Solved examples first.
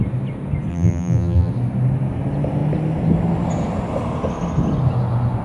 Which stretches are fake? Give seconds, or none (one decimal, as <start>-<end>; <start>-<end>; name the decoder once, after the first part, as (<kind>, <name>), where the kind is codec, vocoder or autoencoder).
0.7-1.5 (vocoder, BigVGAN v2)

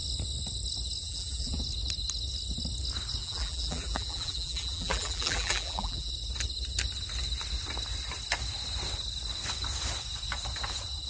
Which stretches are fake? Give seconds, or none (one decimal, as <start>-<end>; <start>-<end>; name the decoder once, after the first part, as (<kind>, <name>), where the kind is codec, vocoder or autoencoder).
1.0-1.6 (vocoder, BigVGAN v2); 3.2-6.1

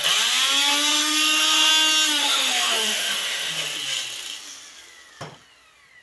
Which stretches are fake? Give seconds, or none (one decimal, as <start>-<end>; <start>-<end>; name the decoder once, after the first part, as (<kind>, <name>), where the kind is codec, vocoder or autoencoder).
0.9-1.7 (autoencoder, DAC-VAE); 2.2-3.5

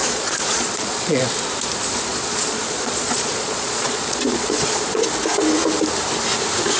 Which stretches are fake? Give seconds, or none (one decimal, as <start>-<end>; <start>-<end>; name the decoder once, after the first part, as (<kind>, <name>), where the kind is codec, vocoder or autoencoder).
0.0-1.2 (vocoder, Vocos); 2.1-5.0